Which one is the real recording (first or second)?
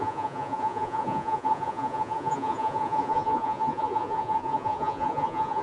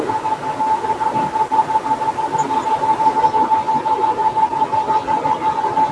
second